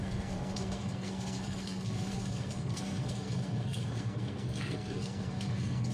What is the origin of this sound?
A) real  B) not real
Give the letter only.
B